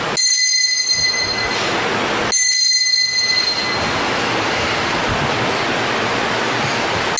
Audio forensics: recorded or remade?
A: recorded